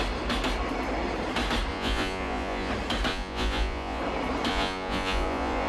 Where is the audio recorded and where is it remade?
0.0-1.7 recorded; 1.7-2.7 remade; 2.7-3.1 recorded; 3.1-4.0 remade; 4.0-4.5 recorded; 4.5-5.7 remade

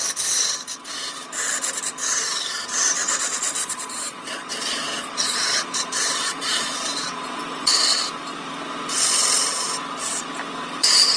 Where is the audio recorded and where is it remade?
0.0-3.6 recorded; 3.6-7.4 remade; 7.4-11.2 recorded

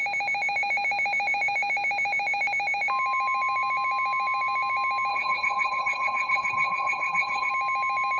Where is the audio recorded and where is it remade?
0.0-5.1 recorded; 5.1-7.5 remade; 7.5-8.2 recorded

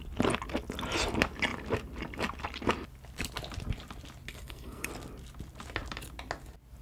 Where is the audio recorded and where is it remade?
0.0-4.3 recorded; 4.3-4.9 remade; 4.9-6.8 recorded

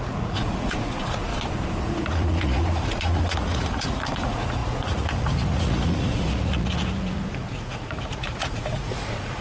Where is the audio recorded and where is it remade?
0.0-1.3 remade; 1.3-1.8 recorded; 1.8-9.4 remade